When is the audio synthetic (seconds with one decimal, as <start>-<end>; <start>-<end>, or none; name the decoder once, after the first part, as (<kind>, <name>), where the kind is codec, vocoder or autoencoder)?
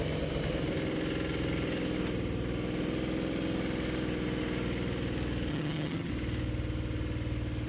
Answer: 5.5-6.1 (vocoder, HiFi-GAN)